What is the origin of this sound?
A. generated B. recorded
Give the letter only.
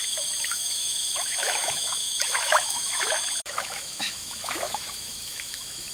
A